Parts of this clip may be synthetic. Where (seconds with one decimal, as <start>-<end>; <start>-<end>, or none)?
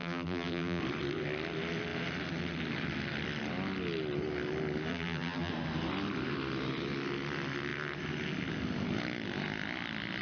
0.0-0.8; 4.9-5.5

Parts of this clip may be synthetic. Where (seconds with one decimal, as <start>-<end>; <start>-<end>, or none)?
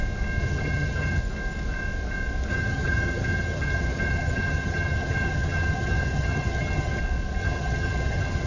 0.4-1.2; 2.5-7.0; 7.4-8.5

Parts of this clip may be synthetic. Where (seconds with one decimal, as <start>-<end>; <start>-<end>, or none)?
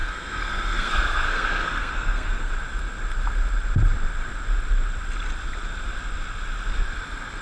0.0-2.5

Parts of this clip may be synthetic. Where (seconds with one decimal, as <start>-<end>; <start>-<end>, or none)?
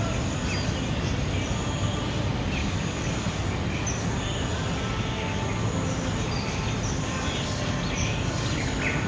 2.6-3.1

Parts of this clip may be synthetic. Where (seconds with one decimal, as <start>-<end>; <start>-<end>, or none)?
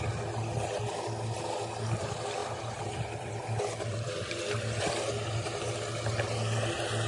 2.4-4.8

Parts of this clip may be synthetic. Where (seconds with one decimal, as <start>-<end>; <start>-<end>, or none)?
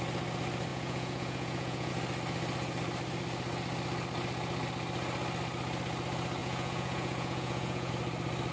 0.7-1.9; 6.4-7.9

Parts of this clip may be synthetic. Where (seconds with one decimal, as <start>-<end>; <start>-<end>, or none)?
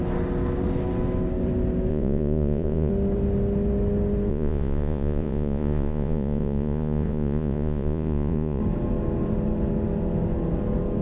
1.9-2.9; 4.3-8.6